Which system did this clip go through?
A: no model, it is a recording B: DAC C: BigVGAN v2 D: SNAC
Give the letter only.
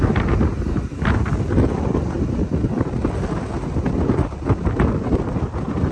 A